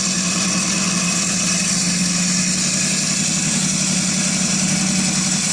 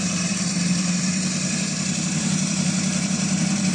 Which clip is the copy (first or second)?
second